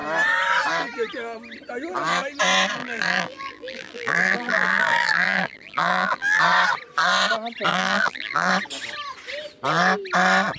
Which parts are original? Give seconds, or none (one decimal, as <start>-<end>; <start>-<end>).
0.0-2.8; 6.4-7.7; 8.5-10.6